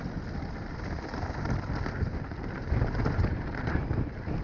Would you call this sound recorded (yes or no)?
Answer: yes